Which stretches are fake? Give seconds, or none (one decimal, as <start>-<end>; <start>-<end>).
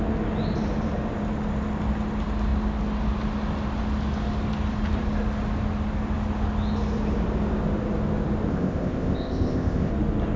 8.5-9.9